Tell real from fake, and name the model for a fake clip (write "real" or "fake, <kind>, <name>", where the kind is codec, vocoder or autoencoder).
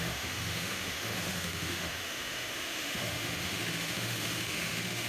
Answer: fake, autoencoder, DAC-VAE